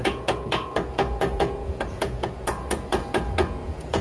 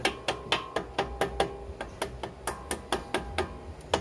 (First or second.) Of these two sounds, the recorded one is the second